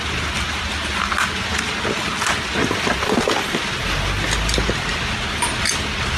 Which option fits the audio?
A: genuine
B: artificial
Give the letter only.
A